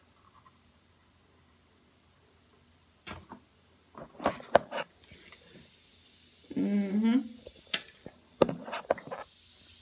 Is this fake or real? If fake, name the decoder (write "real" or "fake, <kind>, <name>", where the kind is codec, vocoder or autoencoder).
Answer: real